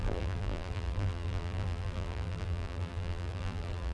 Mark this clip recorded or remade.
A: remade